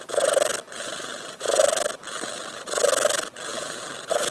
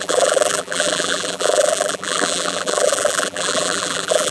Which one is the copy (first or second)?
second